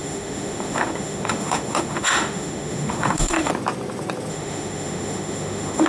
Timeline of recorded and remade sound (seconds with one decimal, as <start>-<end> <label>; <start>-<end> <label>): 0.0-3.5 remade; 3.5-4.3 recorded; 4.3-5.9 remade